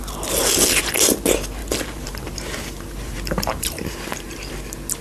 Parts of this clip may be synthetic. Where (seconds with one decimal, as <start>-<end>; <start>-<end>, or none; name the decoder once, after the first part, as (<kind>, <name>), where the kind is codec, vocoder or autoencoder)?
1.6-4.5 (vocoder, BigVGAN v2)